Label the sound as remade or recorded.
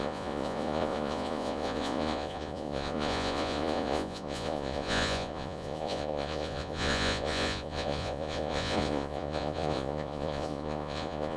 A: remade